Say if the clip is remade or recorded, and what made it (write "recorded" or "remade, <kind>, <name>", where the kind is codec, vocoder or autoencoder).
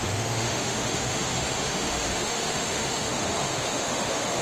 remade, autoencoder, DAC-VAE